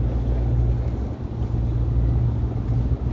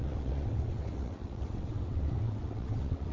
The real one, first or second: first